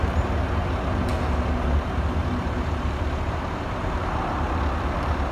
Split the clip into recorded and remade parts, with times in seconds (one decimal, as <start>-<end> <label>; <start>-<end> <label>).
0.0-5.3 remade